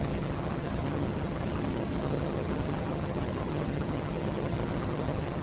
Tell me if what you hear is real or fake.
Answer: fake